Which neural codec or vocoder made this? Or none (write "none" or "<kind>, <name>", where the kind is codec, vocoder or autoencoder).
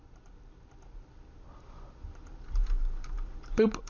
none